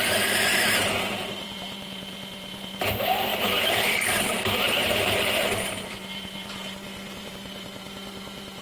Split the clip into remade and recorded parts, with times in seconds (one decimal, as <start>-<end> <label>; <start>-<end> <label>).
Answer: 0.0-8.6 remade